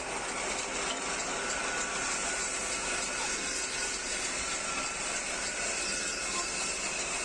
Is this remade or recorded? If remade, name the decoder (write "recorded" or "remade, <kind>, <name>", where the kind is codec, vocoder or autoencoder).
recorded